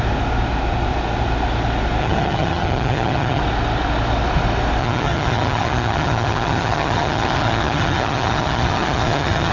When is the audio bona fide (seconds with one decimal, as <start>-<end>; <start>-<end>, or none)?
0.0-2.0; 3.4-4.8